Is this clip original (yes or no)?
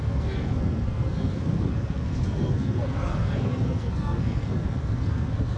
no